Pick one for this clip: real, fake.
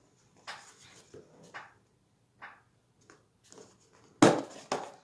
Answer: real